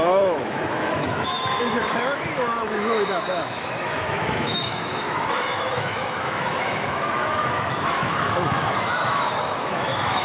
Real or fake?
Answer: fake